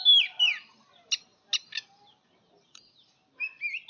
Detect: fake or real real